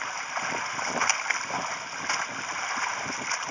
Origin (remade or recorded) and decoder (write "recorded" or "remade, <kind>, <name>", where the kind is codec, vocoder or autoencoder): recorded